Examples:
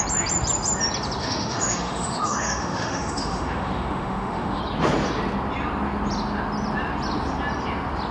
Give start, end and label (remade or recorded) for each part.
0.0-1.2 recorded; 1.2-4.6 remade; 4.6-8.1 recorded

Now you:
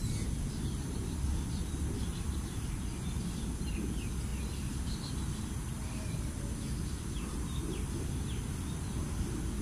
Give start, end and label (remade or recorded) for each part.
0.0-9.6 recorded